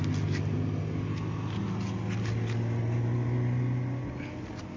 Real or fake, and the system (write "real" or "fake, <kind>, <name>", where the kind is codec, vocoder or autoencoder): real